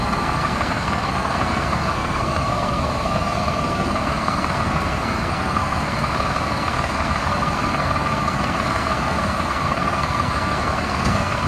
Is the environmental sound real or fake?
fake